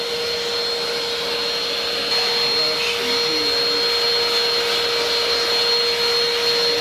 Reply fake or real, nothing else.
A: real